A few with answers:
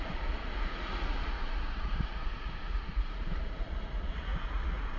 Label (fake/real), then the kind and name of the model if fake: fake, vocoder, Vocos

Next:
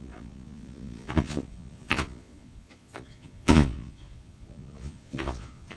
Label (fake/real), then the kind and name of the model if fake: fake, vocoder, Vocos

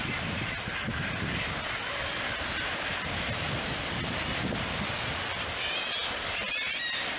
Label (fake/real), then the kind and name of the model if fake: real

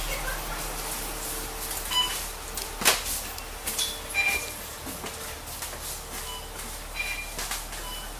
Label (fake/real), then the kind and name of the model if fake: real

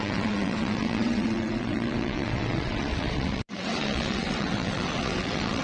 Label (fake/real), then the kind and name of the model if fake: fake, vocoder, WaveNeXt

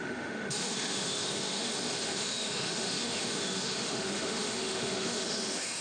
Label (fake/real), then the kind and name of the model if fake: fake, autoencoder, DAC-VAE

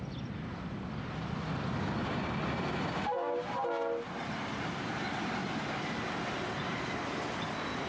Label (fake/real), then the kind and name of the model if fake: real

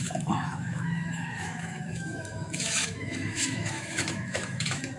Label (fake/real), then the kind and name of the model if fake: fake, autoencoder, DAC-VAE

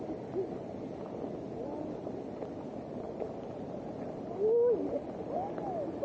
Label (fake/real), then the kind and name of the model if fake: real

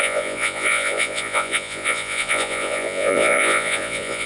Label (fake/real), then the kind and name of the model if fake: fake, vocoder, Vocos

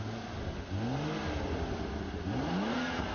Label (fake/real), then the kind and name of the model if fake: real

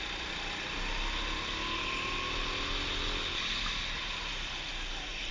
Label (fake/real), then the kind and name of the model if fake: real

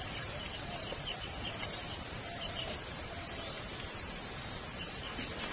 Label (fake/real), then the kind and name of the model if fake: fake, vocoder, BigVGAN v2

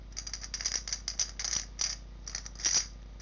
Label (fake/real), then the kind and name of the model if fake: real